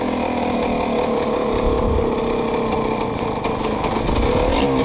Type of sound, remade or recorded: recorded